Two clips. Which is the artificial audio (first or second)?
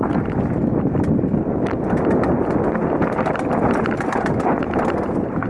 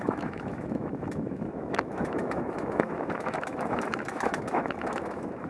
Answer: second